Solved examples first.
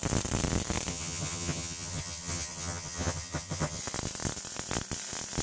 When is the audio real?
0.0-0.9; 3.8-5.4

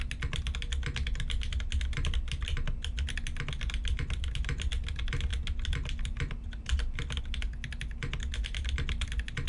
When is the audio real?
0.0-9.5

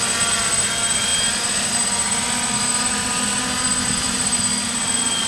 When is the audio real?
0.0-3.8; 4.4-5.3

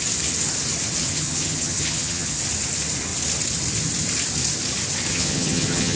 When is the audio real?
0.0-1.0; 2.4-5.1